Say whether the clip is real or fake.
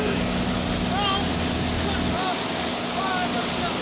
real